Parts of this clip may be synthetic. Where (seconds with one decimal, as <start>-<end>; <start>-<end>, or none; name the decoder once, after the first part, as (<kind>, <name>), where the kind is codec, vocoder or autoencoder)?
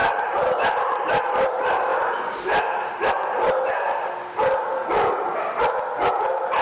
0.0-1.2 (vocoder, BigVGAN v2); 1.9-3.1